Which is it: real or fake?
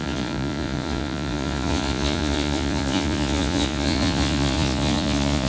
fake